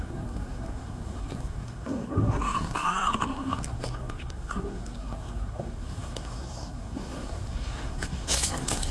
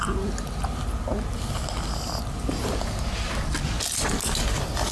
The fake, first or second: first